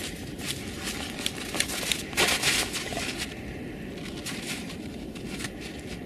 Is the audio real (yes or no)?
yes